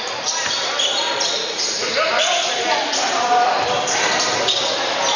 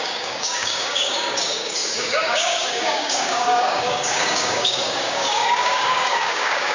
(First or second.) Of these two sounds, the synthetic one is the second